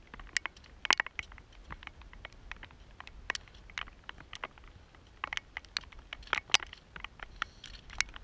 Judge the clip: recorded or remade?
recorded